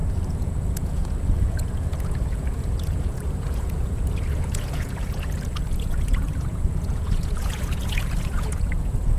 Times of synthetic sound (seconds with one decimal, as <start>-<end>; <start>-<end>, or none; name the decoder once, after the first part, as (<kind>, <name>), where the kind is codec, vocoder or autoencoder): 0.0-9.2 (vocoder, Vocos)